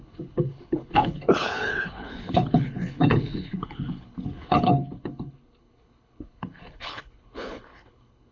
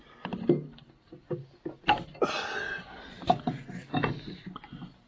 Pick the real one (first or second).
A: second